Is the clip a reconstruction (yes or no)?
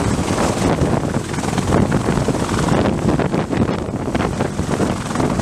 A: no